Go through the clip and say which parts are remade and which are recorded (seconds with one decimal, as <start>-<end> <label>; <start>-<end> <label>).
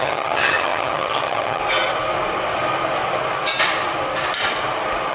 0.0-1.6 remade; 1.6-5.1 recorded